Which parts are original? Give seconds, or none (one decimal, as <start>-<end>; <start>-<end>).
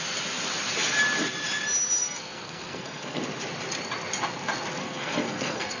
0.0-2.0; 3.2-4.8